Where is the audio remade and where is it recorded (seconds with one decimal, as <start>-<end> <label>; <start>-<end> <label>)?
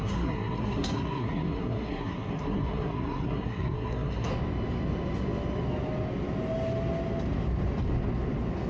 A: 0.0-4.3 remade; 4.3-8.7 recorded